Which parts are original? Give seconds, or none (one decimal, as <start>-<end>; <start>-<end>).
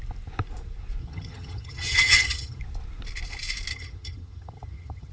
0.0-1.0; 2.6-3.7